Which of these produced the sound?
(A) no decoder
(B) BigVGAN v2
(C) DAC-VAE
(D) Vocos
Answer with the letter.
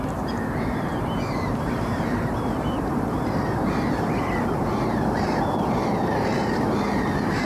B